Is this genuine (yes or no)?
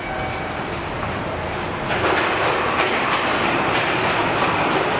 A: no